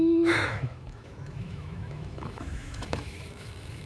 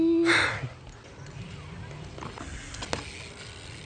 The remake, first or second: first